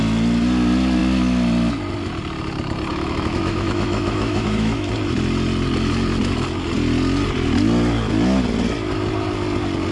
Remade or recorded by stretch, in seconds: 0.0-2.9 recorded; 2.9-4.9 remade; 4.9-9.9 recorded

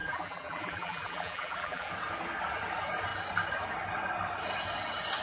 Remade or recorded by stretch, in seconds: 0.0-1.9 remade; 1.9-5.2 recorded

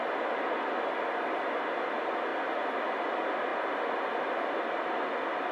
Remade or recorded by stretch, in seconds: 0.0-5.5 recorded

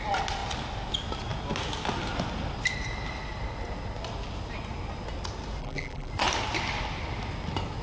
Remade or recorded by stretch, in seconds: 0.0-5.6 recorded; 5.6-6.1 remade; 6.1-7.8 recorded